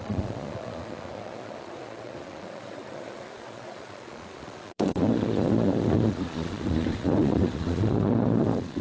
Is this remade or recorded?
remade